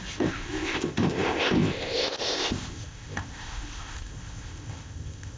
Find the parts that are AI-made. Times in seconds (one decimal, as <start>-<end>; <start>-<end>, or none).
0.0-5.4